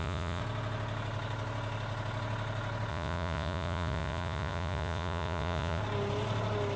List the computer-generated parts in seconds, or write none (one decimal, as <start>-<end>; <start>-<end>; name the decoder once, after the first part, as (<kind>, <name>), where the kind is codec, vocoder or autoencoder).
0.0-0.4 (vocoder, Vocos); 2.9-5.8